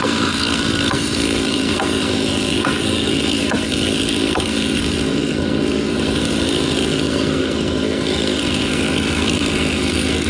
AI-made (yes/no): yes